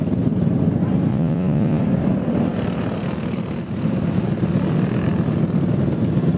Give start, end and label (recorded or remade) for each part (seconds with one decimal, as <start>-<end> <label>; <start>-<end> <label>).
0.0-1.1 recorded; 1.1-1.8 remade; 1.8-6.4 recorded